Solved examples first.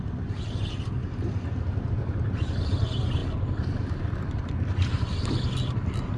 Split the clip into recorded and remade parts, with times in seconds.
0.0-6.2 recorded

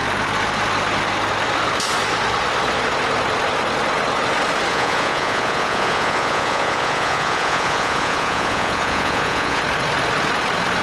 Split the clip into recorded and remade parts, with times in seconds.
0.0-4.7 recorded; 4.7-9.6 remade; 9.6-10.8 recorded

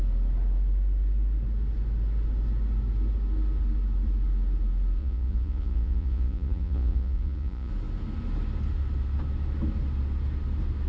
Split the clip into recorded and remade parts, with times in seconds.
0.0-5.0 recorded; 5.0-7.7 remade; 7.7-10.9 recorded

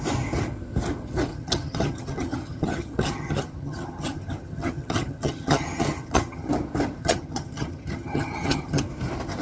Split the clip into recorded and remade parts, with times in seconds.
0.0-1.3 recorded; 1.3-6.5 remade; 6.5-7.0 recorded; 7.0-8.8 remade; 8.8-9.4 recorded

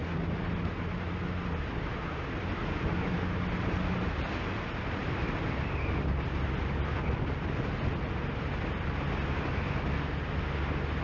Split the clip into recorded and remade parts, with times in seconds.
0.0-11.0 recorded

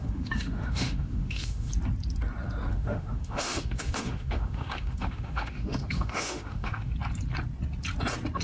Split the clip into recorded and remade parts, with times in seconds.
0.0-1.7 remade; 1.7-2.7 recorded; 2.7-6.9 remade; 6.9-8.4 recorded

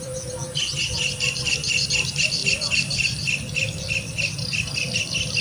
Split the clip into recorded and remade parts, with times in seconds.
0.0-5.4 recorded

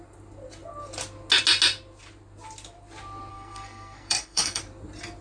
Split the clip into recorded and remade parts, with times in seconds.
0.0-3.3 recorded; 3.3-4.6 remade; 4.6-5.2 recorded